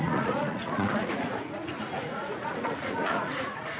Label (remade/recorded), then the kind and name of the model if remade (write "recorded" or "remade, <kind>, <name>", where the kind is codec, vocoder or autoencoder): remade, vocoder, Vocos